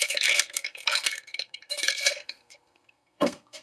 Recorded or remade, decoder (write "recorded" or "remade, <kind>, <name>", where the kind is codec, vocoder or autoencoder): remade, codec, SNAC